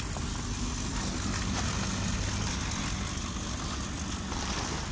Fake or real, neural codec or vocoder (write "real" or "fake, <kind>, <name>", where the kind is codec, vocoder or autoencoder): real